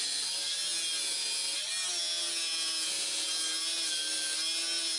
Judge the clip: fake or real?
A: real